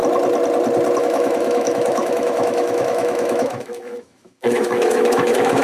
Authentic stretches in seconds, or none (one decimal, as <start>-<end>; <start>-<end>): 0.0-1.0